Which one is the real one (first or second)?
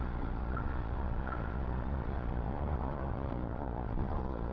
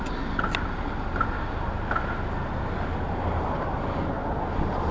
second